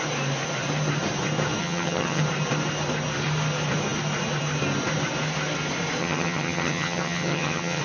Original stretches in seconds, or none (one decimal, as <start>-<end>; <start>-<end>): 0.0-1.6; 2.2-6.0